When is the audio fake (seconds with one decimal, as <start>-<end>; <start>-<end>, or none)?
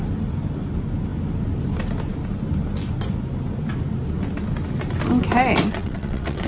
5.7-6.5